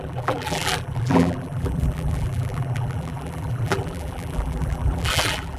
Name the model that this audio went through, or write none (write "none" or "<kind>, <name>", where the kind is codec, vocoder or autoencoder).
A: vocoder, BigVGAN v2